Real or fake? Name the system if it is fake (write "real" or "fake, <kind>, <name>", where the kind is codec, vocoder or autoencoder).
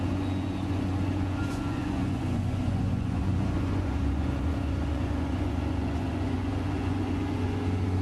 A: fake, vocoder, Vocos